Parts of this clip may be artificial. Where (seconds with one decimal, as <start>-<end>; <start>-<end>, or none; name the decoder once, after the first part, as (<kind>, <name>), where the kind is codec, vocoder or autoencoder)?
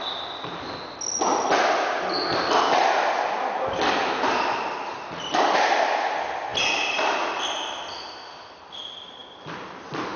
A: none